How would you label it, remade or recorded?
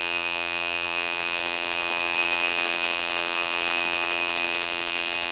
remade